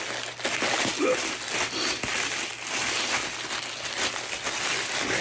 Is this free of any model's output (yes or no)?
yes